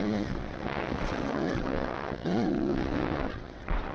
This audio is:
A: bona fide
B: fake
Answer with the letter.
B